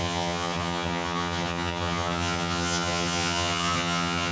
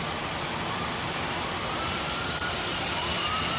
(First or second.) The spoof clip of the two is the first